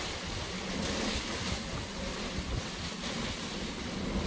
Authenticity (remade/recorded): recorded